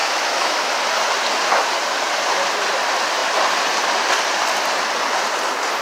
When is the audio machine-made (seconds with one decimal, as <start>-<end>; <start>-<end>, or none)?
0.0-0.7